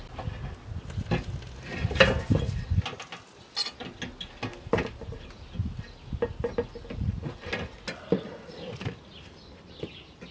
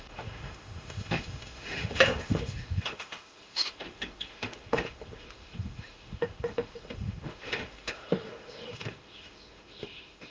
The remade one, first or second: second